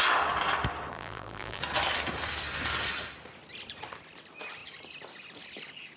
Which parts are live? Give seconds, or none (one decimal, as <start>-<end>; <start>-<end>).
0.0-0.9; 1.6-6.0